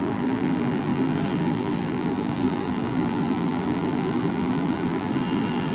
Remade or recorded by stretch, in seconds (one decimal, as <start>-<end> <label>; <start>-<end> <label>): 0.0-5.7 remade

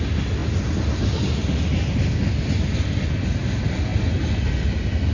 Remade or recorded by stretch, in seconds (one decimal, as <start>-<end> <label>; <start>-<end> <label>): 0.0-5.1 recorded